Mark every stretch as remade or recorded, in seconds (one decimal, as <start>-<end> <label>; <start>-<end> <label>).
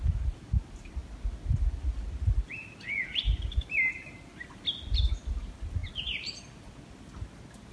0.0-7.7 recorded